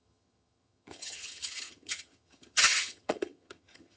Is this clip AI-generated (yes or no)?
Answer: yes